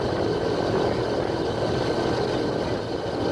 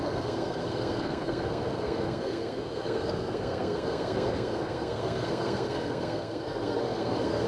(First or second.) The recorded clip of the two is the first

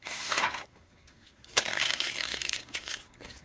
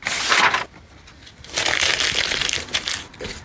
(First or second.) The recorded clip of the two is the second